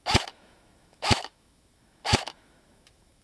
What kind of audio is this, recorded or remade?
remade